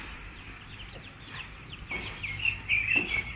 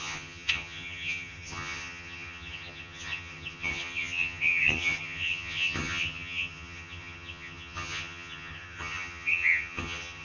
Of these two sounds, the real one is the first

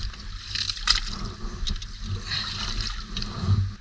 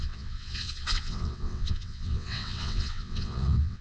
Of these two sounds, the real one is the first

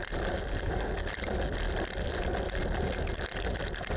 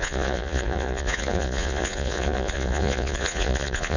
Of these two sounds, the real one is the first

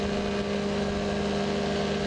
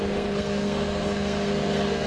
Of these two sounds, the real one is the first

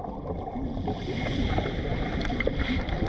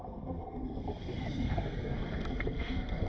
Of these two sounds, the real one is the first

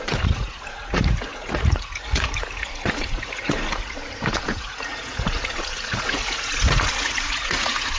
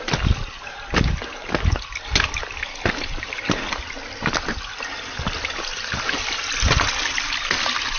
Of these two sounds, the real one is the second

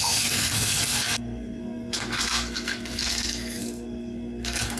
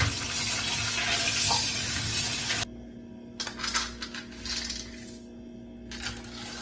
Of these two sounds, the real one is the second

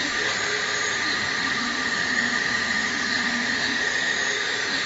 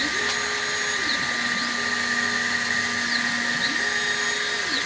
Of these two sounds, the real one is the second